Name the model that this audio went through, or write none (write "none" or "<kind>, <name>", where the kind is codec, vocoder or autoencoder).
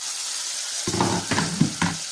none